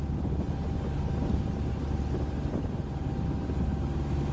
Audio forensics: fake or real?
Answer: real